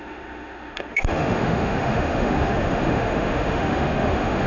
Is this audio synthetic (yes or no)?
yes